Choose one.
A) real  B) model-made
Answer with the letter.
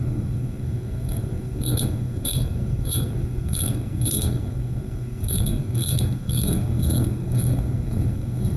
B